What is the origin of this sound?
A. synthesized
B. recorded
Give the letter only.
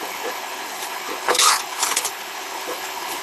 A